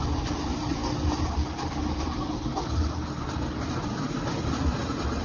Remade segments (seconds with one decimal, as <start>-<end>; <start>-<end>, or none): none